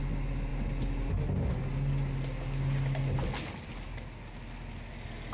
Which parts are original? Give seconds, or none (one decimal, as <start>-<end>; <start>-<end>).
0.0-5.3

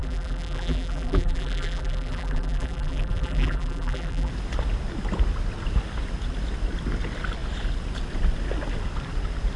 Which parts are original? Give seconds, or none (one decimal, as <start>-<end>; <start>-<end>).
4.3-9.6

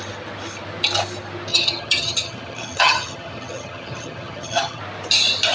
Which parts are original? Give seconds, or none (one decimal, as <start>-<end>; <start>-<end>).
0.0-1.5; 4.8-5.5

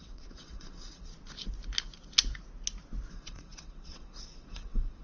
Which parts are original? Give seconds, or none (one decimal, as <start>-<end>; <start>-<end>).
1.1-3.1

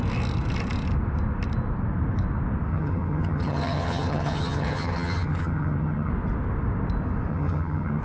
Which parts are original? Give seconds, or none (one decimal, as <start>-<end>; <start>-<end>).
0.0-2.7; 6.1-7.3

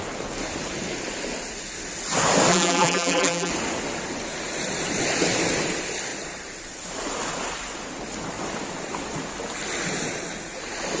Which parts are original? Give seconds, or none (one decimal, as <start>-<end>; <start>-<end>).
0.0-2.5; 3.5-11.0

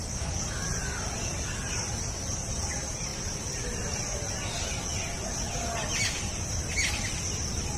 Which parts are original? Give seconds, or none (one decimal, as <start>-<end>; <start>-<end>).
0.0-7.8